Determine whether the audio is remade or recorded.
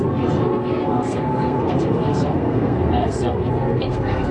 remade